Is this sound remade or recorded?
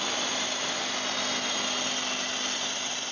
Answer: recorded